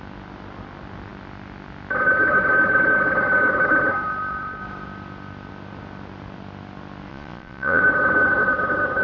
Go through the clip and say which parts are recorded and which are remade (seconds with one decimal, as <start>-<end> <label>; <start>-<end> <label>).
0.0-7.1 recorded; 7.1-7.8 remade; 7.8-9.0 recorded